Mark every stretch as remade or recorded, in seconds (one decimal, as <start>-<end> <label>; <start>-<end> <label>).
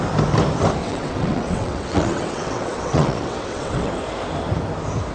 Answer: 0.0-0.8 recorded; 0.8-3.9 remade; 3.9-5.1 recorded